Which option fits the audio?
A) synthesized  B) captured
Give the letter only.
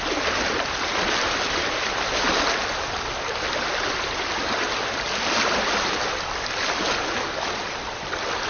B